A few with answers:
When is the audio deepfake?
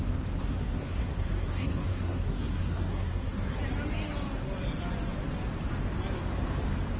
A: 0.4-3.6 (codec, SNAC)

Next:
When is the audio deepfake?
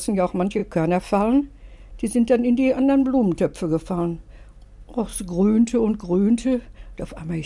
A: none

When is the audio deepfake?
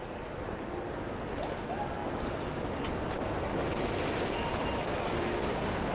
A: 2.0-2.7 (vocoder, BigVGAN v2)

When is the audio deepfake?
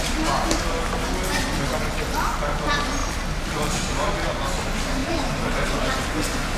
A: 3.0-3.7 (vocoder, BigVGAN v2); 5.0-5.9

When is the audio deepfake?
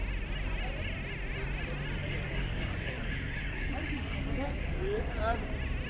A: 2.0-5.1 (codec, DAC)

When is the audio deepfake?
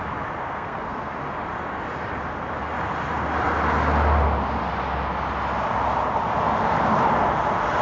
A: 0.4-1.1 (codec, SNAC)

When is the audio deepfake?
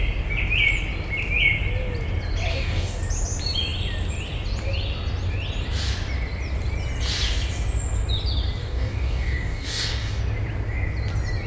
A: 2.5-3.0 (codec, DAC); 8.6-10.2